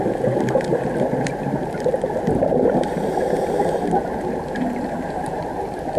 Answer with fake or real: real